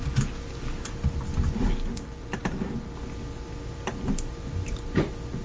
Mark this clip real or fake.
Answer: real